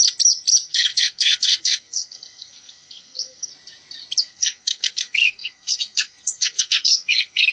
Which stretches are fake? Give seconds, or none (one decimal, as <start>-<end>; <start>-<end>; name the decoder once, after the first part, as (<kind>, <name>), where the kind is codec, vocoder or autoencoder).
0.7-3.5 (codec, SNAC); 4.2-7.5